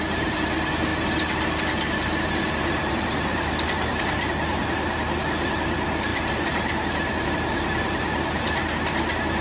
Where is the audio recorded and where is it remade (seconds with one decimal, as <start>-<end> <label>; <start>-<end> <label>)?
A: 0.0-6.1 recorded; 6.1-7.3 remade; 7.3-9.4 recorded